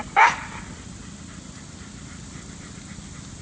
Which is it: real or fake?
real